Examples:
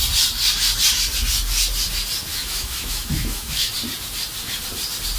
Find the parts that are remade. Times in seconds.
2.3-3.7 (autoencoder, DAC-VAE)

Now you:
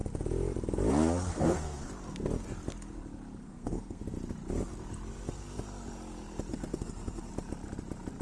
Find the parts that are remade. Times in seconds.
1.3-1.9 (codec, SNAC); 3.4-4.0; 6.5-7.3

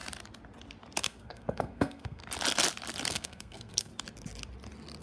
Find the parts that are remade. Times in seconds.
1.0-2.2 (codec, SNAC); 3.1-3.9

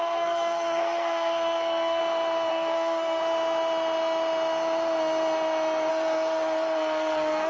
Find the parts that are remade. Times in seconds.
0.0-2.0 (codec, SNAC); 2.5-3.2; 5.9-7.5

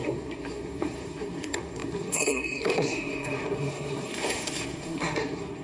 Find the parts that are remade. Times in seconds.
0.0-5.6 (codec, SNAC)

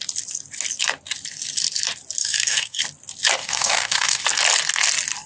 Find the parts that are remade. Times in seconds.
2.2-2.8 (codec, DAC); 3.4-4.2

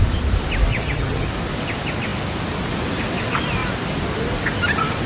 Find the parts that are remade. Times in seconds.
0.7-1.3 (vocoder, HiFi-GAN)

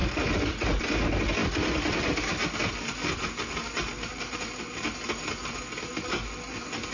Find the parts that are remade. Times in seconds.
none